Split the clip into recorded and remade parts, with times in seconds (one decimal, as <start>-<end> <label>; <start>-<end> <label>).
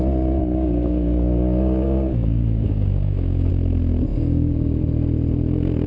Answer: 0.0-0.4 recorded; 0.4-3.5 remade; 3.5-4.1 recorded; 4.1-4.8 remade; 4.8-5.9 recorded